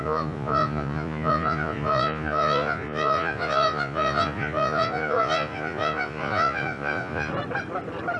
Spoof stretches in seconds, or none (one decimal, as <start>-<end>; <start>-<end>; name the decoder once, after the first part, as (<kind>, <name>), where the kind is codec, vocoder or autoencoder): 0.0-7.3 (vocoder, Vocos)